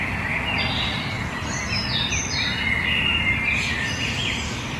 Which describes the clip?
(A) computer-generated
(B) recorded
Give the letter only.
A